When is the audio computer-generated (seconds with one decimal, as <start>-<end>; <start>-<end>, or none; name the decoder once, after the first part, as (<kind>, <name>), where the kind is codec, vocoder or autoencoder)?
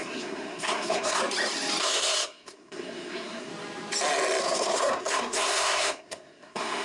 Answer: 0.0-1.2 (codec, SNAC); 1.8-3.5; 4.4-6.8